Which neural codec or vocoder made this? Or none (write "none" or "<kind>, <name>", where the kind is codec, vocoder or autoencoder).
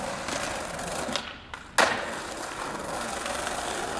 none